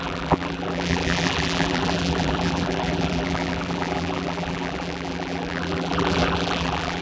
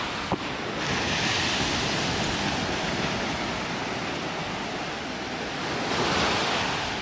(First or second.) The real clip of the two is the second